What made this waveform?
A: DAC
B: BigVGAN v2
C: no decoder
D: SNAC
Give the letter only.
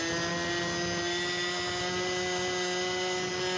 C